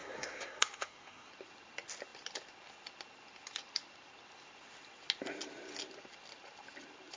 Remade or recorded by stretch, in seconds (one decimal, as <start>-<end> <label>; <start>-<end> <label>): 0.0-1.3 remade; 1.3-7.2 recorded